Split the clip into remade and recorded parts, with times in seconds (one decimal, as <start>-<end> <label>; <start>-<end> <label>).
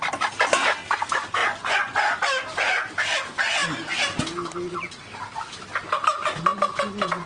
0.0-1.4 recorded; 1.4-2.0 remade; 2.0-7.3 recorded